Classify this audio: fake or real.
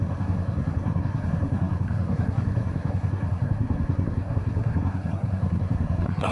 fake